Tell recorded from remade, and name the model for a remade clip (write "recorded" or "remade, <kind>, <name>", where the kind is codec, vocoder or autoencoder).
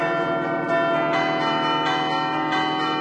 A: recorded